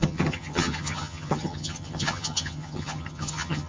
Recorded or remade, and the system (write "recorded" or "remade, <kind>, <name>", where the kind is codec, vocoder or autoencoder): remade, vocoder, HiFi-GAN